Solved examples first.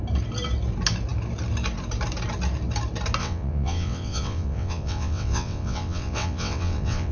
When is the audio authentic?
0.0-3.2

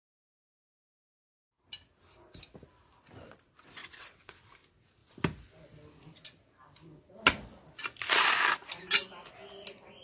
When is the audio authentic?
0.0-3.8; 4.5-10.0

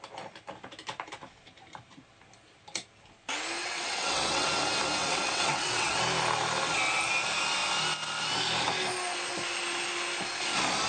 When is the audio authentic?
0.0-3.6; 4.6-5.0; 6.0-10.9

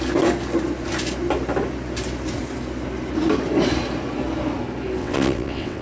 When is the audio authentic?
0.0-5.0

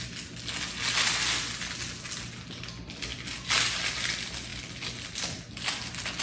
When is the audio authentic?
0.0-6.2